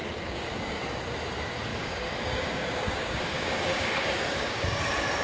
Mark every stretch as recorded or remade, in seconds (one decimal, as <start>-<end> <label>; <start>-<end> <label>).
0.0-0.8 remade; 0.8-1.7 recorded; 1.7-4.8 remade; 4.8-5.2 recorded